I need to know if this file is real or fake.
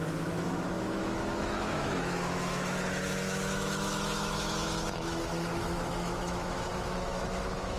fake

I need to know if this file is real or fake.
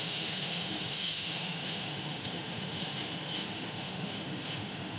fake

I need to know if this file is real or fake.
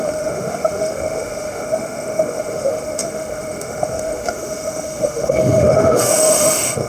fake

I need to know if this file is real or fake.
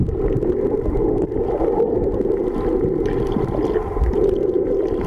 real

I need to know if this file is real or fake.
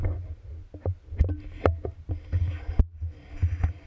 real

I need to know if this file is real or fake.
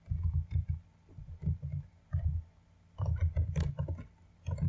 real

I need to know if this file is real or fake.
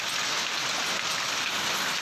real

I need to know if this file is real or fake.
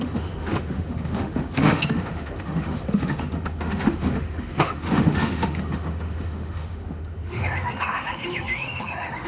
fake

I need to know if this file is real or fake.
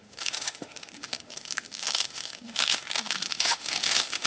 fake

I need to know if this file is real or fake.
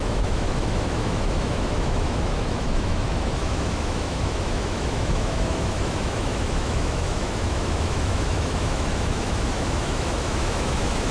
fake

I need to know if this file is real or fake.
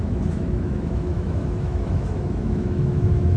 fake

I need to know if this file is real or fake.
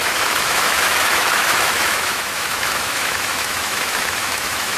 fake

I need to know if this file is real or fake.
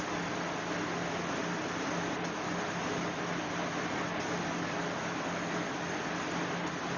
real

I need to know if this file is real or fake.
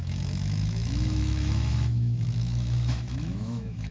fake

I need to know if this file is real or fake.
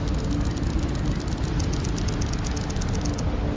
real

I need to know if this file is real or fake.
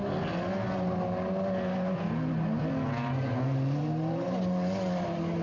real